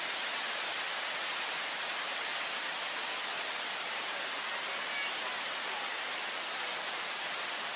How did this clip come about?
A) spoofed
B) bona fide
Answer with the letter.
B